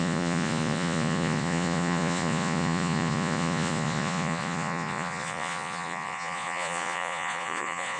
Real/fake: fake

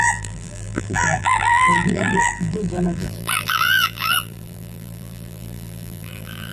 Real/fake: fake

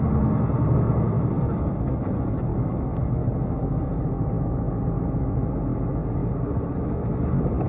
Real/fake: real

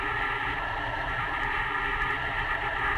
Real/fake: real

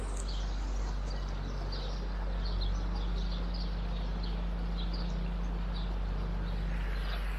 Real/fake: real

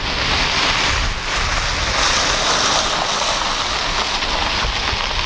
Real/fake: real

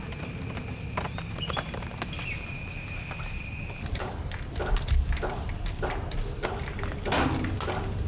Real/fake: real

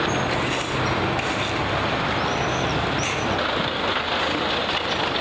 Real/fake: real